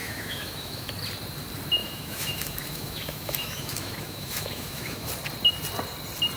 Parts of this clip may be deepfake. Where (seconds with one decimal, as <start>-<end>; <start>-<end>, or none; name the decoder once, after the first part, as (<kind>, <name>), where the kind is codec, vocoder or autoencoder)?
0.0-0.9 (autoencoder, DAC-VAE); 1.8-5.1